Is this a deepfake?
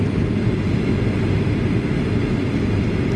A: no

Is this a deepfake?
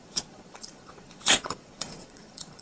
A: yes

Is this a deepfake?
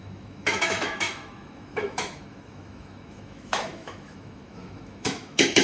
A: yes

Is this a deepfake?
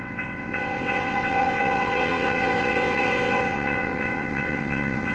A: yes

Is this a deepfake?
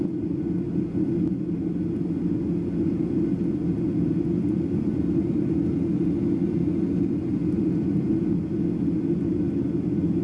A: no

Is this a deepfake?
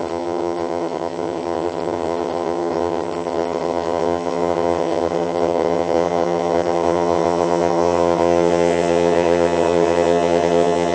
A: yes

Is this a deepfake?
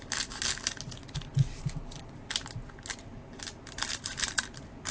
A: no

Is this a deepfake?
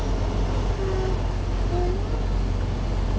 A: no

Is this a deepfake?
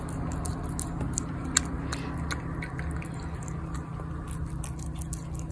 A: no